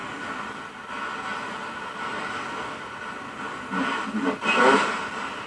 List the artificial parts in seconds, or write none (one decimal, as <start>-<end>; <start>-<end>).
none